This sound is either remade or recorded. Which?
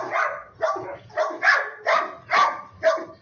recorded